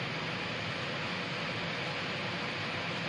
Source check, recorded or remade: recorded